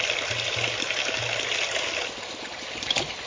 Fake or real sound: real